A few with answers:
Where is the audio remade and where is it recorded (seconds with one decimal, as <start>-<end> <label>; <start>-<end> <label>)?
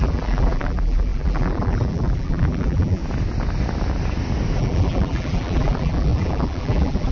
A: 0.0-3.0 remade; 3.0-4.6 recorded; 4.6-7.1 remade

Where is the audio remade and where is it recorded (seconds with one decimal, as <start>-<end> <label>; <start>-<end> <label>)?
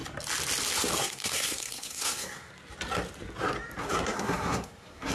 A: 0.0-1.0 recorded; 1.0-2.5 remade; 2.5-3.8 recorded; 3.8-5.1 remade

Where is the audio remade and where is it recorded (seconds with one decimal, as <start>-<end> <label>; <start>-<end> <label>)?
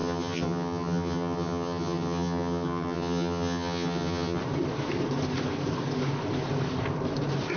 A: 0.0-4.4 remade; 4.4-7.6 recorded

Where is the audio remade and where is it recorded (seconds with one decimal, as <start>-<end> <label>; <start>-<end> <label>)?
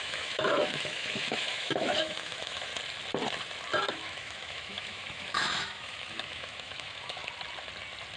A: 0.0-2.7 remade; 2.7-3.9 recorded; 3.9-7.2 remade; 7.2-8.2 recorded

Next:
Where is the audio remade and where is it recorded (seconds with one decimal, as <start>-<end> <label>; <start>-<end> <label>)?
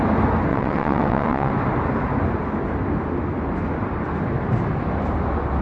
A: 0.0-0.5 recorded; 0.5-1.5 remade; 1.5-5.6 recorded